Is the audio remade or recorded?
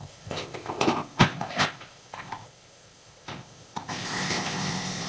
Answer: remade